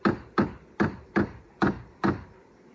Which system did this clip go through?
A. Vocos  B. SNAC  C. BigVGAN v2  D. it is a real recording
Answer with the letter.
D